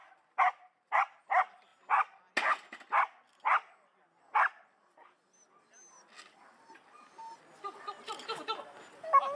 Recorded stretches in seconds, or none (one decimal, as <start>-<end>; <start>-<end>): 0.0-9.4